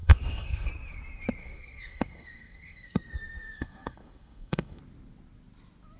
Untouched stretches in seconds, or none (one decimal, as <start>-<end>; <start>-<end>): 0.7-1.4; 4.8-6.0